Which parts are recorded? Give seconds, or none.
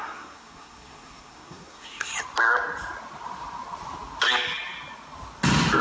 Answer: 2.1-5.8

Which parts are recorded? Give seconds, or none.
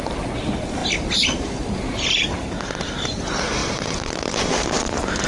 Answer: 0.0-0.8; 2.7-3.6; 4.4-5.3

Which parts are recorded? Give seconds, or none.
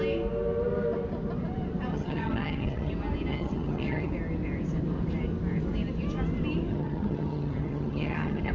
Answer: 0.0-1.9; 2.9-3.3; 4.1-6.7